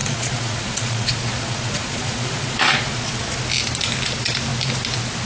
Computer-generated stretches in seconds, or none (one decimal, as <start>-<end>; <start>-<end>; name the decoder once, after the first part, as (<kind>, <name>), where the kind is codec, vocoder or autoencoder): 0.0-3.2 (vocoder, Vocos)